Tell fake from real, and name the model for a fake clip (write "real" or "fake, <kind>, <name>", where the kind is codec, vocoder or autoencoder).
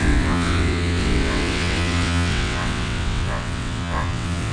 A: fake, vocoder, WaveNeXt